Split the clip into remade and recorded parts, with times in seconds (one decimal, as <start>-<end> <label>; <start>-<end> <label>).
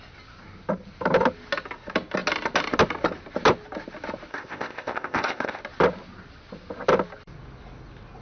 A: 0.0-4.3 recorded; 4.3-5.6 remade; 5.6-8.2 recorded